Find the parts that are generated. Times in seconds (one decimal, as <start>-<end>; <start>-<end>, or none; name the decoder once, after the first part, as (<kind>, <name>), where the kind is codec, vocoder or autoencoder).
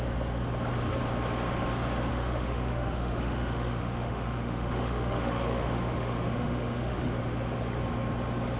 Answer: 2.1-7.2 (autoencoder, DAC-VAE)